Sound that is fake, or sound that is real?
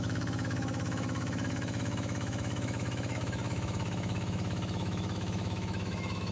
fake